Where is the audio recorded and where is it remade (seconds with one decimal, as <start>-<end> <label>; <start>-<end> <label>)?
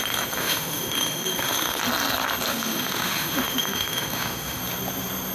0.0-0.4 recorded; 0.4-1.8 remade; 1.8-2.5 recorded; 2.5-4.6 remade; 4.6-5.3 recorded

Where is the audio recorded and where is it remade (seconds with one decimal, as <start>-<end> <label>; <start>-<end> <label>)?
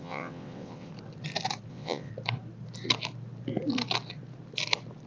0.0-0.9 remade; 0.9-1.7 recorded; 1.7-2.1 remade; 2.1-5.1 recorded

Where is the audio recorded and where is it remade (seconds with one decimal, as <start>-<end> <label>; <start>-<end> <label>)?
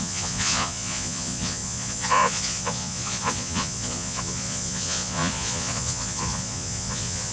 0.0-7.3 remade